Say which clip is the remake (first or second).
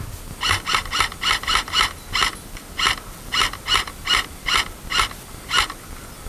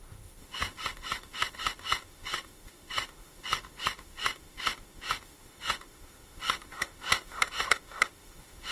second